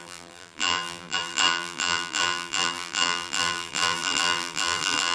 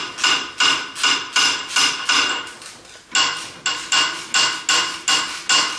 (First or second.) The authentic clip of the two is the second